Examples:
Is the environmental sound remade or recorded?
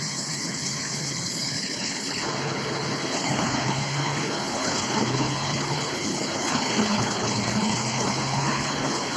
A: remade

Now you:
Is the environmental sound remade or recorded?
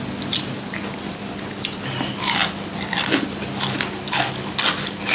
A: recorded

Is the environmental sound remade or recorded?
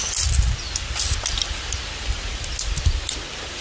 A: recorded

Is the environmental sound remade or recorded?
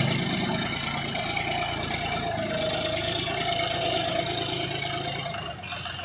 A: recorded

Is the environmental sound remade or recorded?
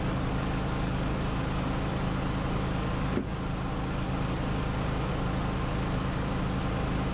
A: recorded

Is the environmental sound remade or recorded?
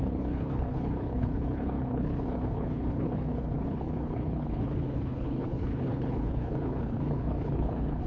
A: remade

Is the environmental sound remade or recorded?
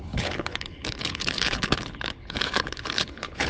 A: remade